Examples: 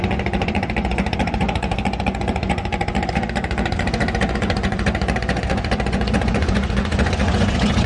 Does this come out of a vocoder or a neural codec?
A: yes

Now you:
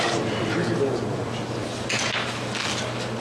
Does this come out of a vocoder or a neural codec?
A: no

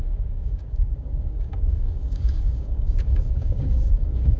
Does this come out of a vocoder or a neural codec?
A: yes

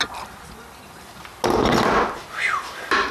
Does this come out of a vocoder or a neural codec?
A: no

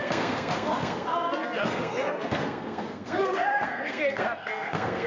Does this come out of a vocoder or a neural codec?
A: yes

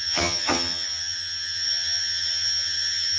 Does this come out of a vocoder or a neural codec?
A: yes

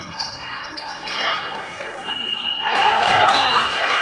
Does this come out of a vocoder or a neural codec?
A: yes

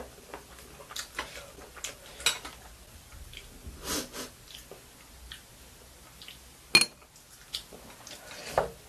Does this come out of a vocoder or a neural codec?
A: no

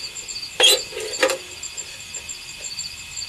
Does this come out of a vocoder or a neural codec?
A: no